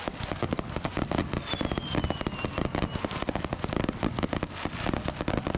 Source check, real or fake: real